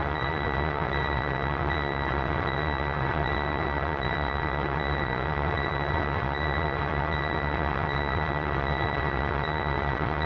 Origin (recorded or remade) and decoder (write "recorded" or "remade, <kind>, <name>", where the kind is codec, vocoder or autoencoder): remade, vocoder, WaveNeXt